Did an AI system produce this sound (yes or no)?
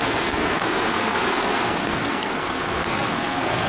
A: yes